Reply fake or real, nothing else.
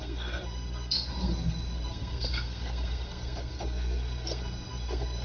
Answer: fake